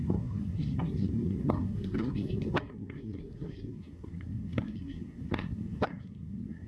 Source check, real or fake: fake